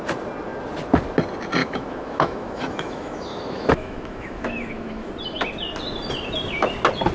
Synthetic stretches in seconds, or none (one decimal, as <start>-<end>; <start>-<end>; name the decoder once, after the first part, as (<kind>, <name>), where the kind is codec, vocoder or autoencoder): 1.6-5.1 (autoencoder, DAC-VAE)